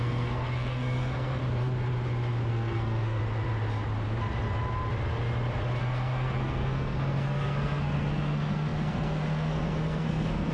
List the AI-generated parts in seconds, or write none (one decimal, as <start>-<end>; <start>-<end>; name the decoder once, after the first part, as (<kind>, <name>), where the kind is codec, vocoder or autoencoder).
0.0-1.4 (codec, SNAC); 2.5-3.2; 5.8-10.5